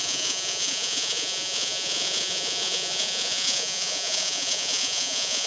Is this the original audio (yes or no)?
no